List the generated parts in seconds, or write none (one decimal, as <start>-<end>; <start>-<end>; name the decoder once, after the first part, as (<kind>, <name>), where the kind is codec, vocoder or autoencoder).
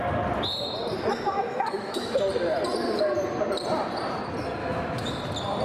1.1-2.2 (autoencoder, DAC-VAE); 4.6-5.1